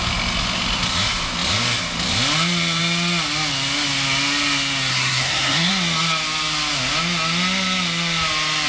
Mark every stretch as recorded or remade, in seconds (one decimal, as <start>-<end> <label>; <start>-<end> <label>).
0.0-4.9 recorded; 4.9-5.7 remade; 5.7-8.7 recorded